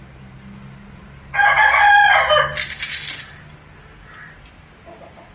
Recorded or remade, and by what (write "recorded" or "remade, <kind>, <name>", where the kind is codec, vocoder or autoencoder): recorded